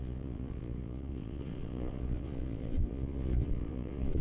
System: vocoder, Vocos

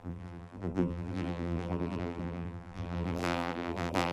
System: vocoder, BigVGAN v2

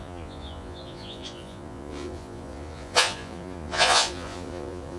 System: vocoder, Vocos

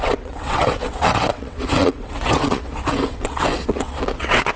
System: vocoder, WaveNeXt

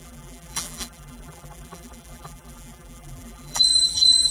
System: vocoder, BigVGAN v2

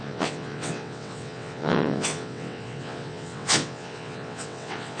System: vocoder, WaveNeXt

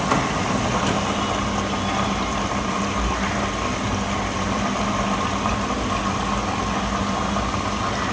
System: none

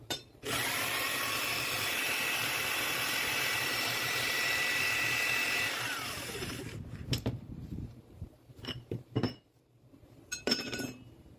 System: vocoder, BigVGAN v2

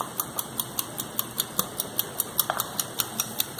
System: none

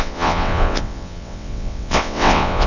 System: vocoder, WaveNeXt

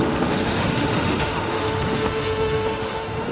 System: autoencoder, DAC-VAE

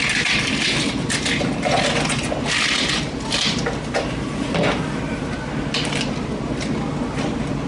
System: none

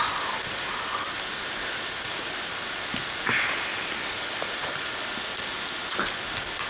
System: none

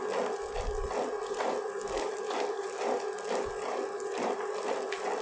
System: none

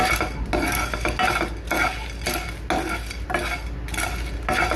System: none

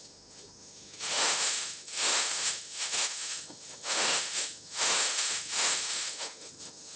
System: autoencoder, DAC-VAE